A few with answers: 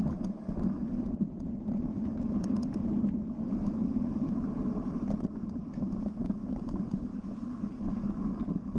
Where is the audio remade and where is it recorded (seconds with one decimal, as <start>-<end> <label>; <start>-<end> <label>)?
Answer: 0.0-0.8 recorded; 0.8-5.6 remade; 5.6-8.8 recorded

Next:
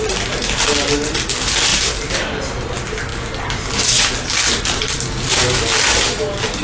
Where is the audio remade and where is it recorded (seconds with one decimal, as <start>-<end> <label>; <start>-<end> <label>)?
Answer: 0.0-6.6 recorded

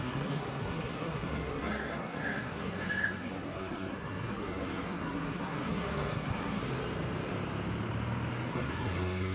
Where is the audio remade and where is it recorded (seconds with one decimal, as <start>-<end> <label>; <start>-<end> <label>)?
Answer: 0.0-6.6 remade; 6.6-8.5 recorded; 8.5-9.3 remade